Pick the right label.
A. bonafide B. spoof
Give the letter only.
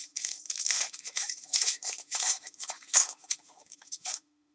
B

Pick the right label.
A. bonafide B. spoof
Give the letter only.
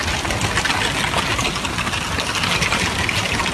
A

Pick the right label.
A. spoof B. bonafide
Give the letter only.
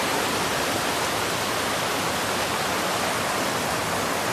B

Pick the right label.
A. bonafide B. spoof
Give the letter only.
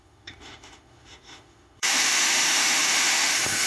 B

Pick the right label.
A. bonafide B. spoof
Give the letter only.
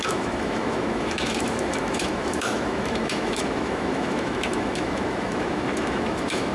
B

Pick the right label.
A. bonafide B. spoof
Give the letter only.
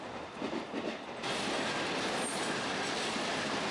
A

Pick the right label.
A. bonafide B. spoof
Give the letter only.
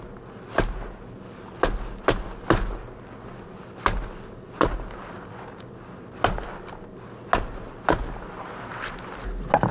A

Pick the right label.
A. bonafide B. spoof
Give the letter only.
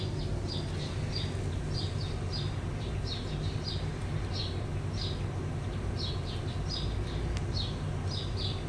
A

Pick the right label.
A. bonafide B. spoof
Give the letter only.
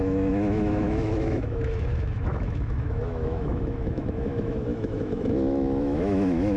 B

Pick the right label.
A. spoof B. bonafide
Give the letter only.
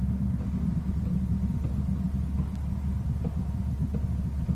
B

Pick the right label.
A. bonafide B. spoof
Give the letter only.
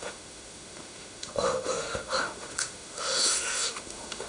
B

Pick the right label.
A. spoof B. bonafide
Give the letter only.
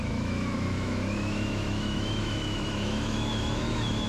A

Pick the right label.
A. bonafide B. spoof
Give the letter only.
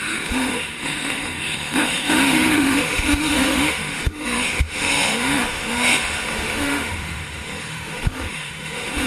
B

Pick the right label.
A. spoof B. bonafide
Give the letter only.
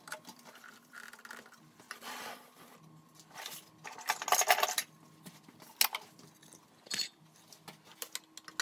B